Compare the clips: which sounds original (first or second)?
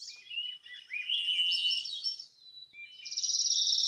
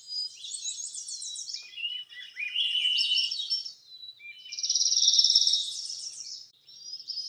first